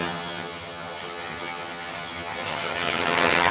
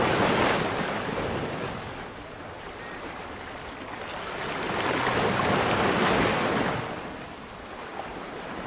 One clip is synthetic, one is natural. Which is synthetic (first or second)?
first